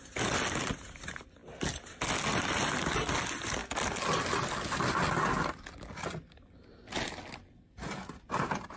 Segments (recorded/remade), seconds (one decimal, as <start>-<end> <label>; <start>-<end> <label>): 0.0-8.8 recorded